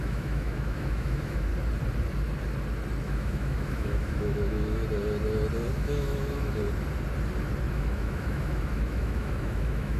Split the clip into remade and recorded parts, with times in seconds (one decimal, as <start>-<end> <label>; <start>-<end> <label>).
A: 0.0-1.5 remade; 1.5-3.0 recorded; 3.0-4.8 remade; 4.8-5.7 recorded; 5.7-6.6 remade; 6.6-7.7 recorded; 7.7-10.0 remade